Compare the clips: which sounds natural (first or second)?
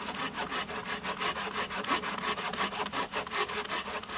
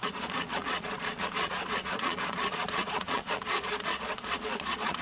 first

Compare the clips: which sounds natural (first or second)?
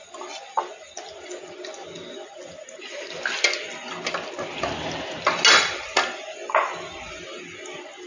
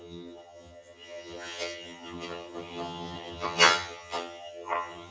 first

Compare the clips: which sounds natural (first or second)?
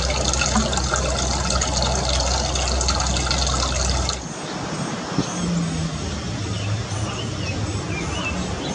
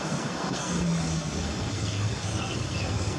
first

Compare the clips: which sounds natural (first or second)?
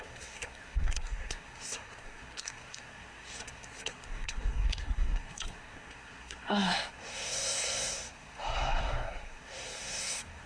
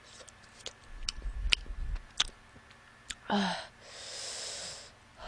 second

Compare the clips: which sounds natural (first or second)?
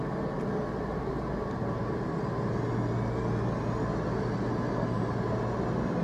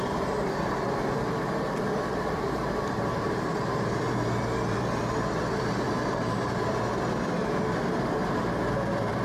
first